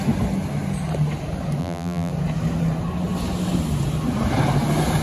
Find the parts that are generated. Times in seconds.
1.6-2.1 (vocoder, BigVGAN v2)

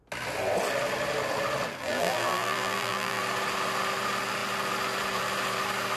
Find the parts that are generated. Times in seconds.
1.8-3.2 (vocoder, BigVGAN v2)

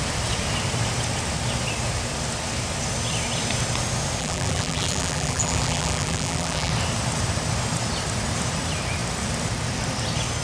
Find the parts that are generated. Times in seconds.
4.2-6.7 (vocoder, BigVGAN v2)

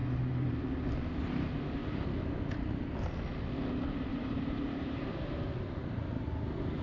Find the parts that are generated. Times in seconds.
0.0-0.5 (vocoder, BigVGAN v2); 1.8-2.7; 4.1-5.1